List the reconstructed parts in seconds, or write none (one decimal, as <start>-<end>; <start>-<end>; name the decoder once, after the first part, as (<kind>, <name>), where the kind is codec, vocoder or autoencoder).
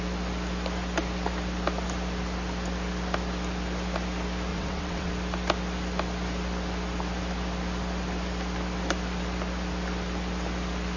4.5-5.1 (vocoder, WaveNeXt)